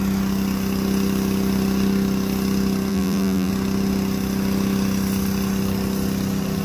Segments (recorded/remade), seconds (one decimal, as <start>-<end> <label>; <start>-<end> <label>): 0.0-2.9 recorded; 2.9-3.5 remade; 3.5-6.6 recorded